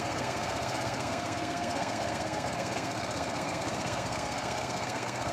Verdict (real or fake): fake